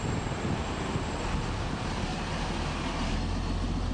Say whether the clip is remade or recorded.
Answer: recorded